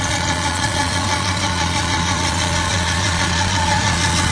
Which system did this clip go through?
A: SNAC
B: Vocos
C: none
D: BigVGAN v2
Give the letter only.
B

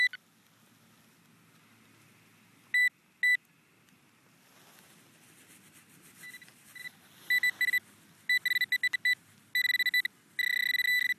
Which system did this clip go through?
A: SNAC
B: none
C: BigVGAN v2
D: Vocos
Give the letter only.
B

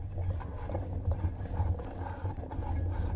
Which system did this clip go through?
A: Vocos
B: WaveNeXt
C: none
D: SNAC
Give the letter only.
C